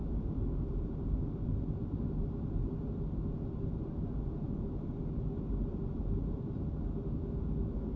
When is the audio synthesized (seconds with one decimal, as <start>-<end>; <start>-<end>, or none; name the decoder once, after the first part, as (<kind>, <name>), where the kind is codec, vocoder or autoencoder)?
0.0-8.0 (vocoder, BigVGAN v2)